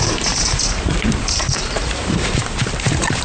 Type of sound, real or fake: fake